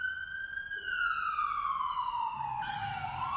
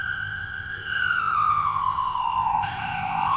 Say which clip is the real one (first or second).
first